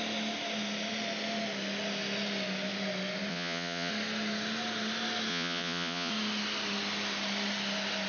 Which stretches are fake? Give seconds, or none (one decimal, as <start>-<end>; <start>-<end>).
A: 3.3-3.9; 5.3-6.1